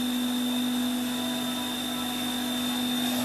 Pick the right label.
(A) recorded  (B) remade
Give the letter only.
A